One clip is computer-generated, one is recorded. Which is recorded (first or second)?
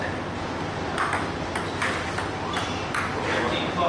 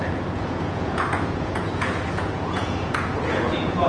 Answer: first